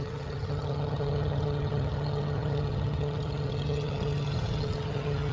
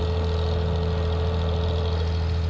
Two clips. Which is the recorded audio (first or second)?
second